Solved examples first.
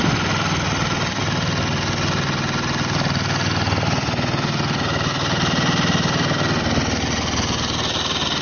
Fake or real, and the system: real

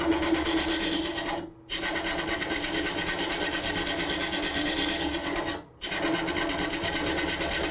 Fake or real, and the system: real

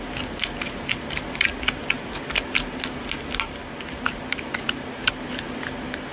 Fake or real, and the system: real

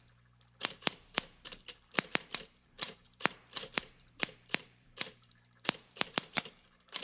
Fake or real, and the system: fake, vocoder, BigVGAN v2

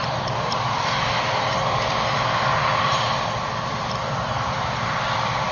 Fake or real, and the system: fake, vocoder, BigVGAN v2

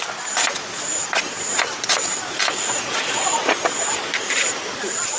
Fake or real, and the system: real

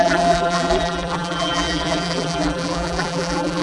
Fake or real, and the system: fake, vocoder, BigVGAN v2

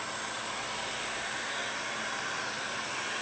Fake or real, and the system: fake, vocoder, BigVGAN v2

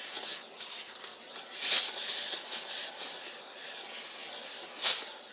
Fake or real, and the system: real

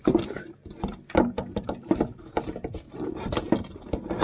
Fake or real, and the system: real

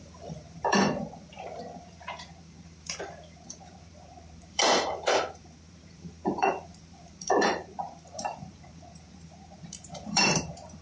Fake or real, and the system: fake, vocoder, BigVGAN v2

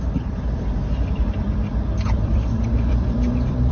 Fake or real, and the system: fake, vocoder, BigVGAN v2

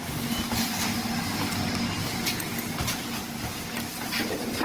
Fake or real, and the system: real